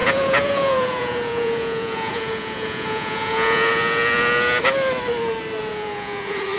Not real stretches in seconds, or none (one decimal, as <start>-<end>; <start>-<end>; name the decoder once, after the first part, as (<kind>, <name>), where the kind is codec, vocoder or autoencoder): 0.0-3.7 (vocoder, Vocos); 5.6-6.6